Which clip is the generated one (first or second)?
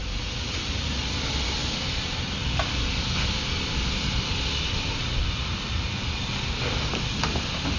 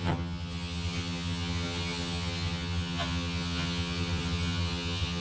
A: second